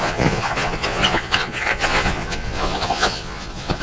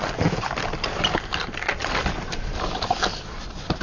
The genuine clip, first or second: second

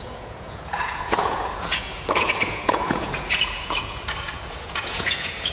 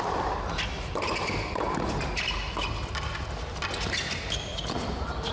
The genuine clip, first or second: second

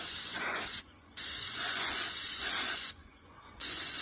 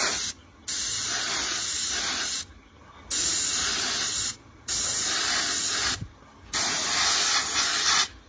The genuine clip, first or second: second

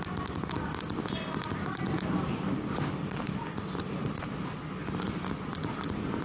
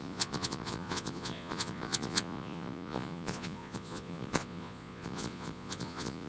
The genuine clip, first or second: first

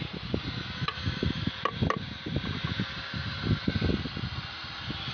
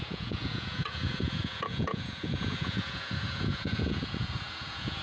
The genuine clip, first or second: first